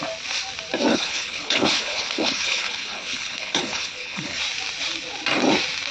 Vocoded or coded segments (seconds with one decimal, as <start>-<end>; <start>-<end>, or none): 0.9-4.4